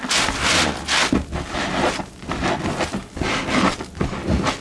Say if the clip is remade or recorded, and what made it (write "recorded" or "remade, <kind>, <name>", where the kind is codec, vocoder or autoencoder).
recorded